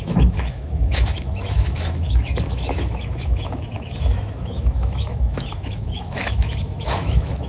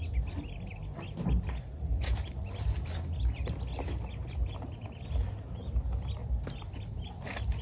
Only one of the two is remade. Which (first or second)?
first